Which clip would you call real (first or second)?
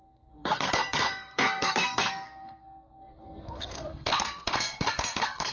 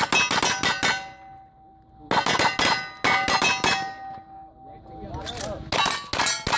second